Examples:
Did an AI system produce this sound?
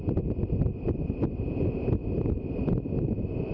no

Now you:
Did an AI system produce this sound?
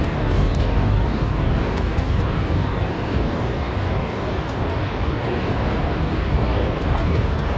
yes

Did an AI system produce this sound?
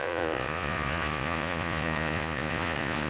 yes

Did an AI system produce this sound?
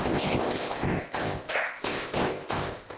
yes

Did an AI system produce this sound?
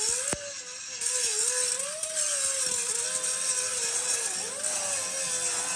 no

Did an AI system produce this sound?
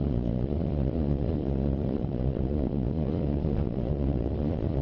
yes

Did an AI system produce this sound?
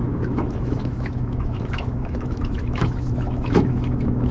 yes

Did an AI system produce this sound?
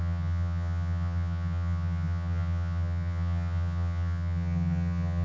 yes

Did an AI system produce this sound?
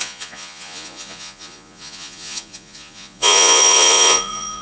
yes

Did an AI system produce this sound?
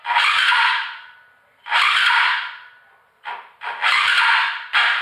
yes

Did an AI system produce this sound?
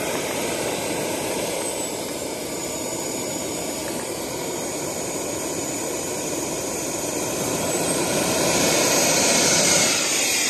yes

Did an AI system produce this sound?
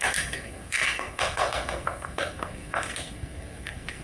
yes